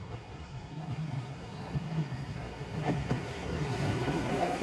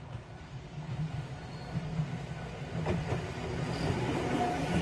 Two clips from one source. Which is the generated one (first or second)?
first